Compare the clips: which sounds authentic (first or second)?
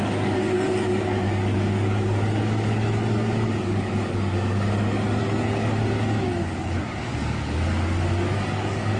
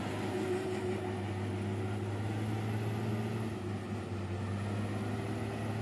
second